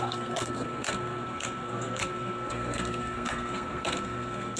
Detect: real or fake fake